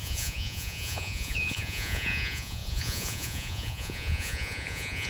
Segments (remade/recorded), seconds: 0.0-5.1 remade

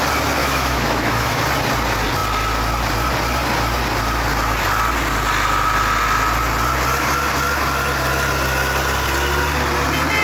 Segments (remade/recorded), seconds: 0.0-0.4 recorded; 0.4-1.4 remade; 1.4-10.2 recorded

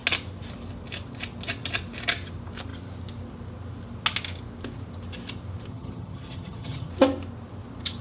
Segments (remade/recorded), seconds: 0.0-5.7 recorded; 5.7-6.9 remade; 6.9-8.0 recorded

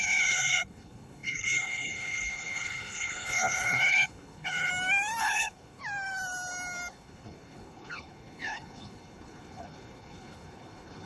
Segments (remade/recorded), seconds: 0.0-4.7 remade; 4.7-5.2 recorded; 5.2-5.8 remade; 5.8-6.9 recorded; 6.9-11.1 remade

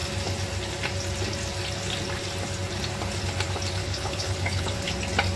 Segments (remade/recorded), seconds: 0.0-3.8 recorded; 3.8-4.9 remade; 4.9-5.4 recorded

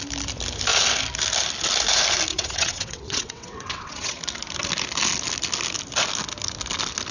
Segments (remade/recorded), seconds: 0.0-2.3 recorded; 2.3-4.2 remade; 4.2-7.1 recorded